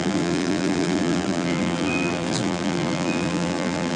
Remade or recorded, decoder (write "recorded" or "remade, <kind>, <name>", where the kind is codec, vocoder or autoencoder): remade, vocoder, BigVGAN v2